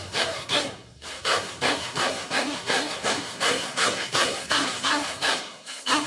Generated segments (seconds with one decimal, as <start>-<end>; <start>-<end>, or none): 0.0-6.1

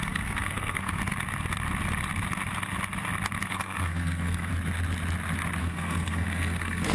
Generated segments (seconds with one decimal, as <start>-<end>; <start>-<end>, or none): 0.0-1.0; 3.5-4.5; 5.6-6.9

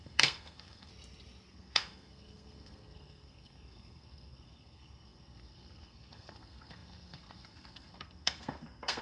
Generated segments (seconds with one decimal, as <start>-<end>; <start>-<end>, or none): 0.0-0.9; 1.5-9.0

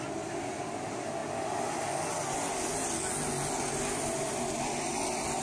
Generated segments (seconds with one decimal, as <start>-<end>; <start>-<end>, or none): none

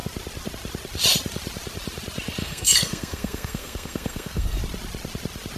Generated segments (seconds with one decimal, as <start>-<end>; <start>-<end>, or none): 2.4-4.6

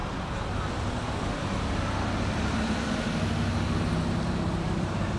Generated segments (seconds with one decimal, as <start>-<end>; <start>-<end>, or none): none

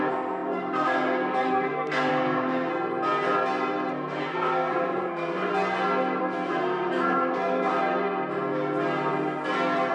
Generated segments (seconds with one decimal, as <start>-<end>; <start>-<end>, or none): 0.0-2.7; 3.9-5.5; 6.2-7.7

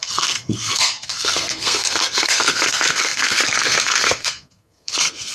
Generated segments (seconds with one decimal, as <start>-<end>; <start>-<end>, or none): 0.0-5.3